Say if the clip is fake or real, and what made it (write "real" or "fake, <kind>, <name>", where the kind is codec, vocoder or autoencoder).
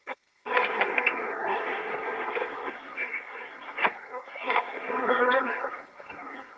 fake, codec, SNAC